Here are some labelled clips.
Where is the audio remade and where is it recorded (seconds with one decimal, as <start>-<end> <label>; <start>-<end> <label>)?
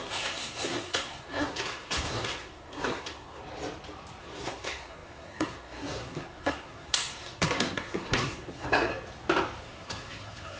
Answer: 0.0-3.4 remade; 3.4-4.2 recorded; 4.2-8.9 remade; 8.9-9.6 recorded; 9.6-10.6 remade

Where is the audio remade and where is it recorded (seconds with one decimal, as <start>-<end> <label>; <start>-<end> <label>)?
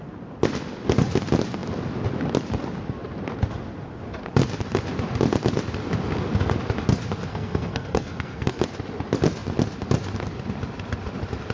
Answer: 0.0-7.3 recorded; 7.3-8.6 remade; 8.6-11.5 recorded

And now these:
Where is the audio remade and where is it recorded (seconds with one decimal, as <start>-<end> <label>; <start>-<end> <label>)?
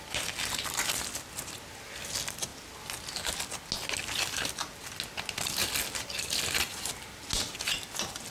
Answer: 0.0-8.3 recorded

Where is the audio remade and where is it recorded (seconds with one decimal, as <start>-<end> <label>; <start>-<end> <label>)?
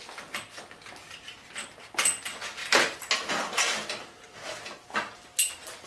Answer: 0.0-5.9 recorded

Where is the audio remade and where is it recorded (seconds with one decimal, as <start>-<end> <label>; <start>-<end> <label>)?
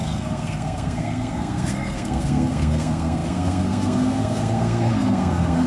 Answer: 0.0-5.7 remade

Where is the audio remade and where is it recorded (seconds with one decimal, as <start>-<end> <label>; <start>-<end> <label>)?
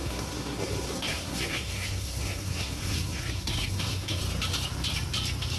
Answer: 0.0-4.2 remade; 4.2-5.6 recorded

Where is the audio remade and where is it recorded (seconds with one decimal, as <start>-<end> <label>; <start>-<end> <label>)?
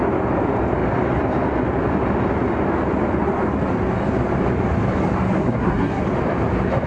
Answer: 0.0-5.4 recorded; 5.4-6.0 remade; 6.0-6.9 recorded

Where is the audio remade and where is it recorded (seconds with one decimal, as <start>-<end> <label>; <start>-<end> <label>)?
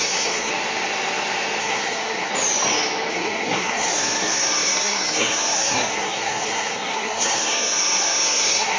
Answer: 0.0-0.5 remade; 0.5-1.6 recorded; 1.6-2.3 remade; 2.3-3.1 recorded; 3.1-8.8 remade